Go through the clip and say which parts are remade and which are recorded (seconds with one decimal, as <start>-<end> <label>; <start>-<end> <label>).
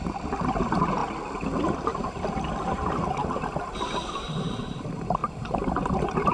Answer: 0.0-1.0 remade; 1.0-1.7 recorded; 1.7-6.3 remade